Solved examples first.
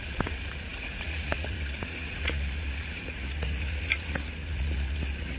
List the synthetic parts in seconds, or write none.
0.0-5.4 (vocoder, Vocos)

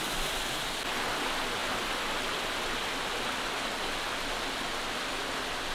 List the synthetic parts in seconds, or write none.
none

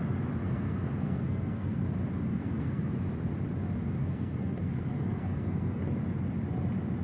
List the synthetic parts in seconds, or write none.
0.4-1.8 (codec, SNAC); 2.3-2.9; 4.0-5.8

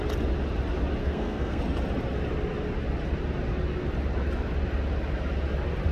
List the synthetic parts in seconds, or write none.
1.0-1.6 (codec, SNAC)

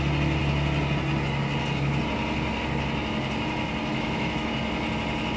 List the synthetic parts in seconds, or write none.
3.9-4.5 (autoencoder, DAC-VAE)

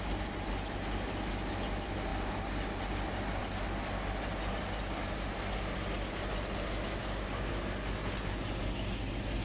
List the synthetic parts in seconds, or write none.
7.0-7.5 (codec, DAC)

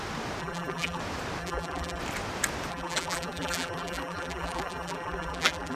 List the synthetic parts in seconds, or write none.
0.4-1.0 (vocoder, BigVGAN v2); 1.4-2.0; 2.7-5.8

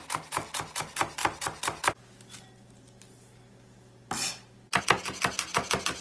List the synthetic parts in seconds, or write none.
none